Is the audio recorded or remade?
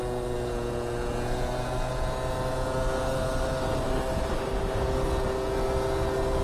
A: recorded